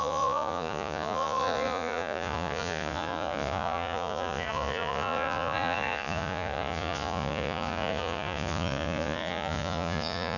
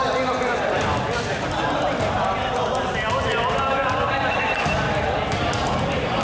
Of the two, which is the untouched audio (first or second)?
second